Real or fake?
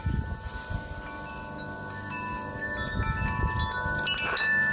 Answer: real